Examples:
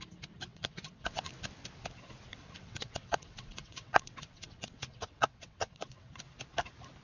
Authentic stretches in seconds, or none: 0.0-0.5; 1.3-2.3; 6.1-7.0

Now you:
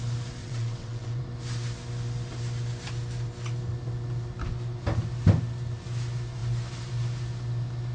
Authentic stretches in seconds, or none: 0.0-0.4; 1.2-7.9

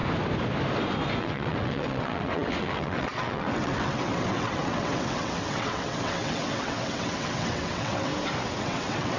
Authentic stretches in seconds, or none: 0.0-1.2; 8.1-8.6

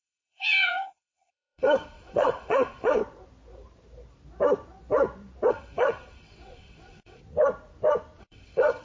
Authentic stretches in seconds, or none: 3.0-5.5; 7.2-8.2